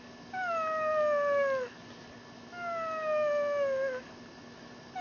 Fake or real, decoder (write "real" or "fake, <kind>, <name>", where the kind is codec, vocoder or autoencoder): real